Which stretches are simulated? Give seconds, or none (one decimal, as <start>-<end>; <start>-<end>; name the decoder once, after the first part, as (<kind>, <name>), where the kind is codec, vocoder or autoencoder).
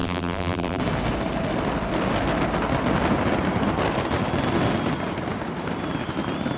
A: 0.0-0.8 (vocoder, BigVGAN v2)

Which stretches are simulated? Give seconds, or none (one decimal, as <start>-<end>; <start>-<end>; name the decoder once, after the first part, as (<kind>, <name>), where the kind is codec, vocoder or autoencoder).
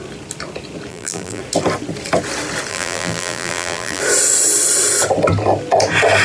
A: 0.9-1.4 (vocoder, BigVGAN v2); 2.7-4.0